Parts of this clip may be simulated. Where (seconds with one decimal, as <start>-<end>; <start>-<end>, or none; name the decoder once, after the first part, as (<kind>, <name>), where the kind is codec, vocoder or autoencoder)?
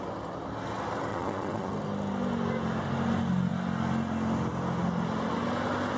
1.1-1.7 (vocoder, Vocos)